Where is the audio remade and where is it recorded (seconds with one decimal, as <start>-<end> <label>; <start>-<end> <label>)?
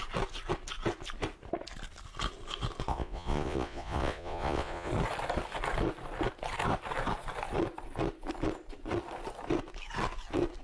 0.0-2.9 recorded; 2.9-4.9 remade; 4.9-10.6 recorded